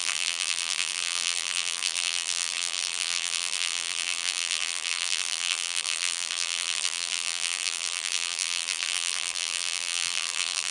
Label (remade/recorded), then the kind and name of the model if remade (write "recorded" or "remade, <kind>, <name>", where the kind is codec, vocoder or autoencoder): remade, vocoder, BigVGAN v2